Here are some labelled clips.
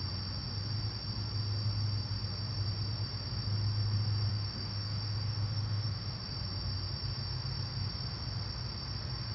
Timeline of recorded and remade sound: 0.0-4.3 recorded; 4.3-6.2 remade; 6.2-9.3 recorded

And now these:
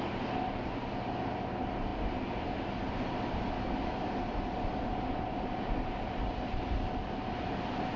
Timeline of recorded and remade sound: 0.0-8.0 recorded